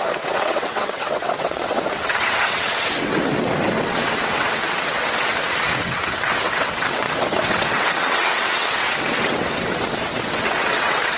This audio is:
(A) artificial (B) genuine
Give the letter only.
A